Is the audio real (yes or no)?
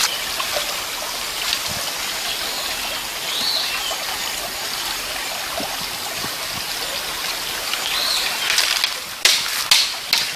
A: yes